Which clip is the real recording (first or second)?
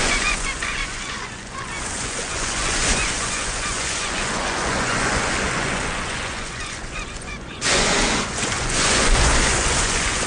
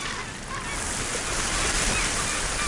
second